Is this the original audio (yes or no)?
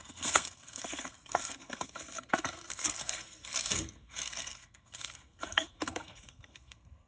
no